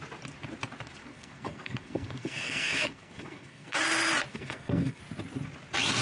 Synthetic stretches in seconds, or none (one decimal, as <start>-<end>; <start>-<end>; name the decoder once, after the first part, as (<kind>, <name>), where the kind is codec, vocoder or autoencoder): 1.0-3.8 (codec, SNAC); 4.3-5.0